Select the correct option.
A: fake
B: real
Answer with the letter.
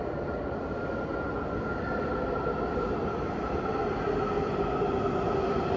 B